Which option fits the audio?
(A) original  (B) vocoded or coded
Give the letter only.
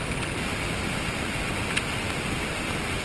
A